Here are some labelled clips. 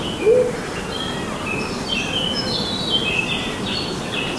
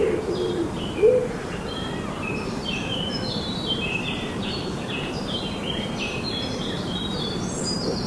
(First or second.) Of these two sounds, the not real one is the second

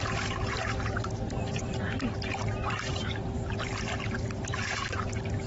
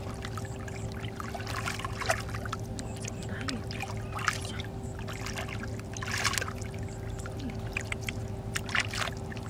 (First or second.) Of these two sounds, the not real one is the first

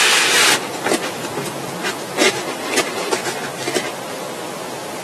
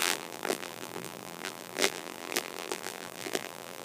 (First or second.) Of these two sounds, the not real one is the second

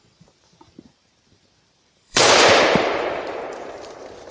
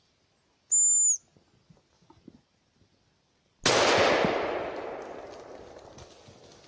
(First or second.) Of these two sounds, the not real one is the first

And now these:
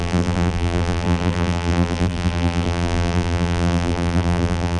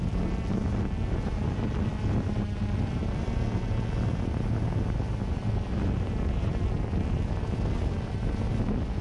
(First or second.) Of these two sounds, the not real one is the first